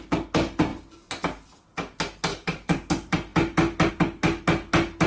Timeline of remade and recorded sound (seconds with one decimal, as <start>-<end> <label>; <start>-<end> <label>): 0.0-2.3 recorded; 2.3-2.9 remade; 2.9-5.1 recorded